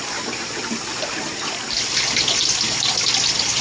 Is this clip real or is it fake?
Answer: real